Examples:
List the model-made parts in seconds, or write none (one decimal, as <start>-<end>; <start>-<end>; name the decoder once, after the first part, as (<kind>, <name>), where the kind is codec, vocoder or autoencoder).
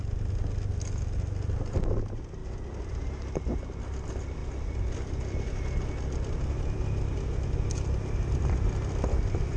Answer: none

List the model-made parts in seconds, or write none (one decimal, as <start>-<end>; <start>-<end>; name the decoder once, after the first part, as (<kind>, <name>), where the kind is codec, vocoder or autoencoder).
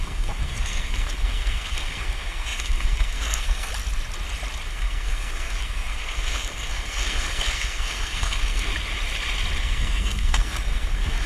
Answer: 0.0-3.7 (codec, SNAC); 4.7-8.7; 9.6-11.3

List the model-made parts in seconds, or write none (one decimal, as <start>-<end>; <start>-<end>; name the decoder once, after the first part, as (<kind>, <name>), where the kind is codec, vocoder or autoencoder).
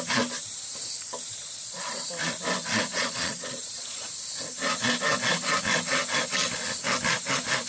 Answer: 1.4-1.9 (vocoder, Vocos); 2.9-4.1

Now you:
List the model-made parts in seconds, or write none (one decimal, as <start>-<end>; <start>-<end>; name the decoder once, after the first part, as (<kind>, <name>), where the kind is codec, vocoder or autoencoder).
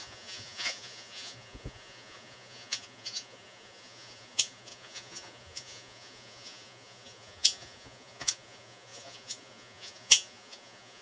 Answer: 0.0-11.0 (vocoder, Vocos)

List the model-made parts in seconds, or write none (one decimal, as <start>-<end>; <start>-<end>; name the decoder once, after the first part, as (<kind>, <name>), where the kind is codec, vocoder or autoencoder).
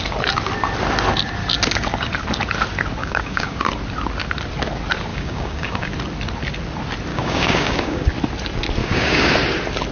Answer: 3.0-3.6 (codec, DAC); 5.1-5.9; 7.1-8.1; 8.8-9.3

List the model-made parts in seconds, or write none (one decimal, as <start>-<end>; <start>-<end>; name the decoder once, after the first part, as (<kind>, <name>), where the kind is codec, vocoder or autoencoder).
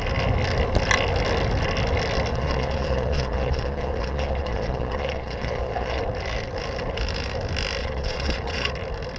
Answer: 2.3-6.0 (vocoder, Vocos); 7.8-8.7